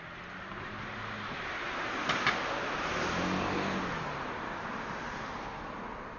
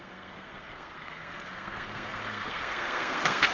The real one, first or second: first